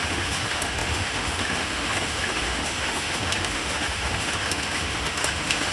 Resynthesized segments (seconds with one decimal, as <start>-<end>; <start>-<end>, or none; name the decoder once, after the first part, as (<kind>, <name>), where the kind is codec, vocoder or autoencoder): 0.0-5.7 (autoencoder, DAC-VAE)